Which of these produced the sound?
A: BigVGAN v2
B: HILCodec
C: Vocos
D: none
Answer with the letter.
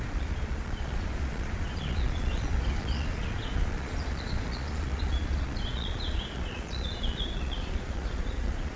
C